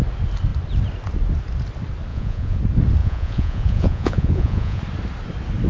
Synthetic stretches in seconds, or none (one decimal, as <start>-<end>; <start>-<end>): 2.1-2.6; 3.0-4.8